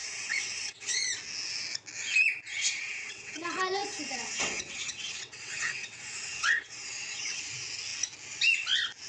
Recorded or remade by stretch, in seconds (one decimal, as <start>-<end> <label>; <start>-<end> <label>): 0.0-1.0 remade; 1.0-2.5 recorded; 2.5-7.4 remade; 7.4-9.1 recorded